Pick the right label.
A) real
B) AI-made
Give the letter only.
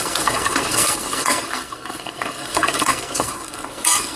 B